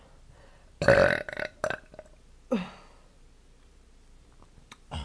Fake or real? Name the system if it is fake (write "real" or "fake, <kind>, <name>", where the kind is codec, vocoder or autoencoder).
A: real